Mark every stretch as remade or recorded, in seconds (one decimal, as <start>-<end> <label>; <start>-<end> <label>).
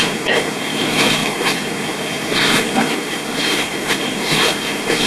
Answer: 0.0-5.1 remade